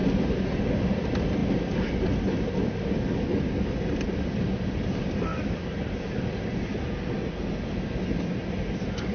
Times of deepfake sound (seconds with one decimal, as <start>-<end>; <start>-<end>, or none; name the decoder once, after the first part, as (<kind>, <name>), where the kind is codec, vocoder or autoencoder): none